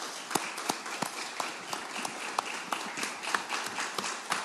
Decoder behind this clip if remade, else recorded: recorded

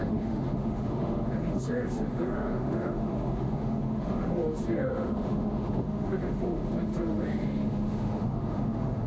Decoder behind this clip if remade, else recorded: remade, autoencoder, DAC-VAE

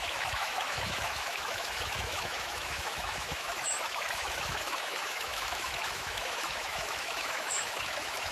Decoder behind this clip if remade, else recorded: remade, autoencoder, DAC-VAE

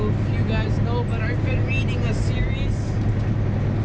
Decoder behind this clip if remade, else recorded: recorded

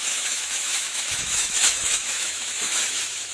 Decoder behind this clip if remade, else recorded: remade, autoencoder, DAC-VAE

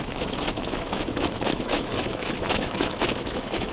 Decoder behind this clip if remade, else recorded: remade, autoencoder, DAC-VAE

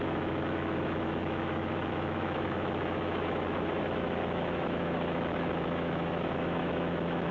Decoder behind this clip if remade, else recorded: remade, autoencoder, DAC-VAE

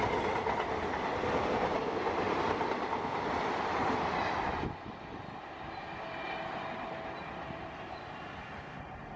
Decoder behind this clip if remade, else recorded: recorded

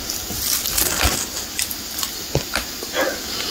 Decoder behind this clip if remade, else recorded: recorded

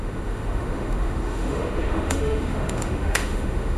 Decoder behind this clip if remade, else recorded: remade, autoencoder, DAC-VAE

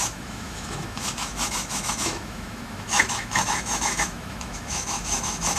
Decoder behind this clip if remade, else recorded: remade, autoencoder, DAC-VAE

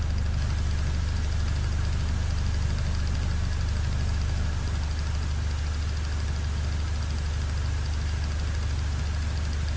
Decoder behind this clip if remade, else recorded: recorded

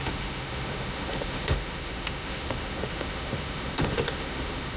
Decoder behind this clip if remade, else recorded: remade, autoencoder, DAC-VAE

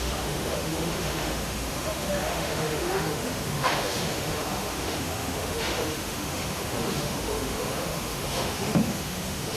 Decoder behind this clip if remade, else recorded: remade, autoencoder, DAC-VAE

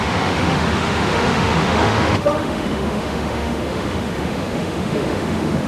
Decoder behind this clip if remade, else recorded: remade, autoencoder, DAC-VAE